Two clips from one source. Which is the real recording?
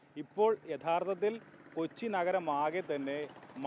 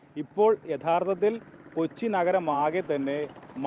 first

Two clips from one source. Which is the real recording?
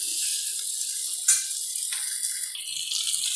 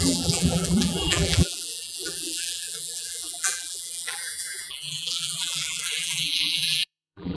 first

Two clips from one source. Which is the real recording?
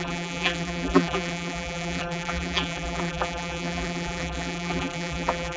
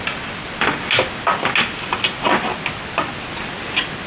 second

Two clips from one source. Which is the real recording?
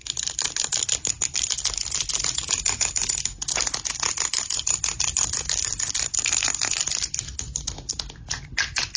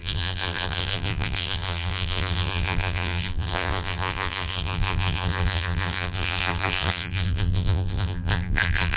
first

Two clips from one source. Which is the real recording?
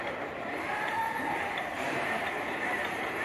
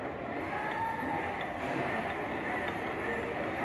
second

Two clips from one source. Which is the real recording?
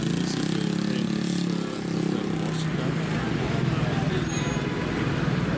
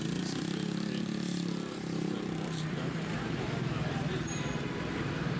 first